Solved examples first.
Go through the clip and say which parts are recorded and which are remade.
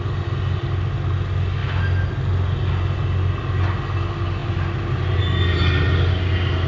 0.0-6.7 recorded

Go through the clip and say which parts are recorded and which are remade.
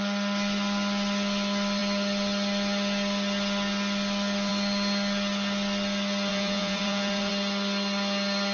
0.0-6.3 recorded; 6.3-7.3 remade; 7.3-8.5 recorded